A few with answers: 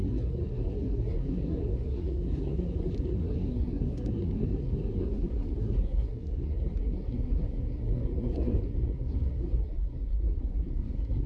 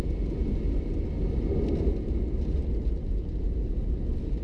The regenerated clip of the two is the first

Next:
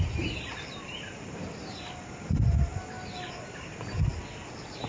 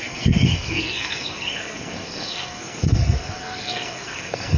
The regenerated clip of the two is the second